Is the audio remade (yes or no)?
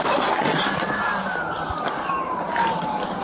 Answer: yes